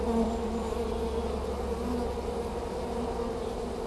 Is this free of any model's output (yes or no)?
yes